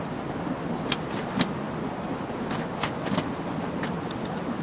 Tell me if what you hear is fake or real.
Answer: real